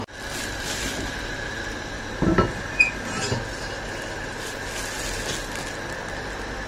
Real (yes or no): yes